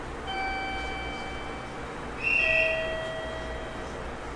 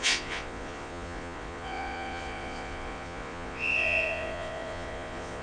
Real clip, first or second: first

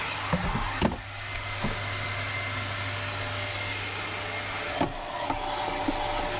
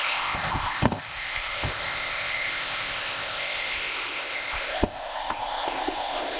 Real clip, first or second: first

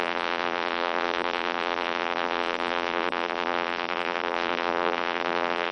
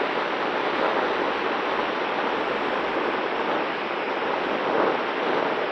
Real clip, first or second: second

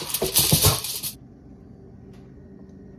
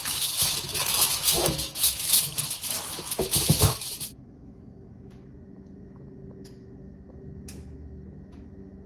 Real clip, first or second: first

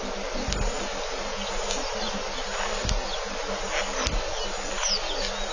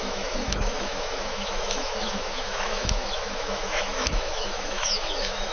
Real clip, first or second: first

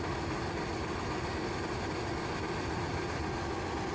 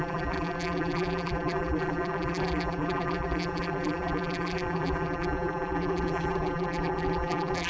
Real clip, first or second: first